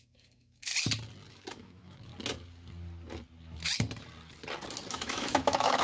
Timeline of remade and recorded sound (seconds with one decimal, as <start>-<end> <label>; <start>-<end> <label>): 0.0-0.7 remade; 0.7-1.3 recorded; 1.3-2.1 remade; 2.1-4.9 recorded; 4.9-5.8 remade